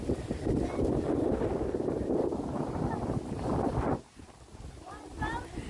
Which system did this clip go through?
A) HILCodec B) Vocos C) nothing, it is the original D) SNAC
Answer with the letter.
C